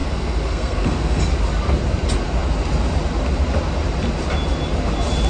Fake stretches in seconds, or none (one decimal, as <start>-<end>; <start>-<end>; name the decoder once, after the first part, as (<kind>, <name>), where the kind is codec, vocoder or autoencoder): 0.0-1.2 (codec, SNAC)